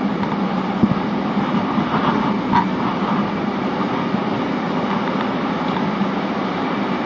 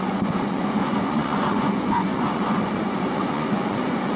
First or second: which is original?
first